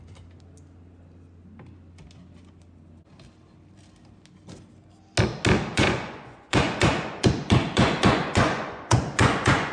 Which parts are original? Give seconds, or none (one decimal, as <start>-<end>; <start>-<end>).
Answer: 0.0-5.7